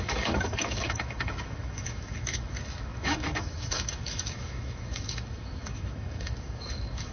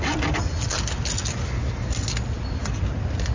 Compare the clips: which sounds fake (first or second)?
first